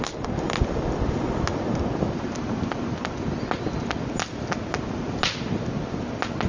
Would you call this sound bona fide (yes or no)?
yes